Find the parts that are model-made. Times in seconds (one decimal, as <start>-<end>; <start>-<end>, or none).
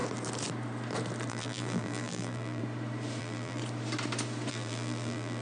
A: 1.3-2.6; 3.2-3.6; 4.5-5.4